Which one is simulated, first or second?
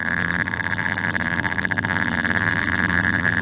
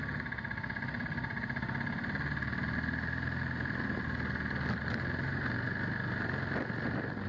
first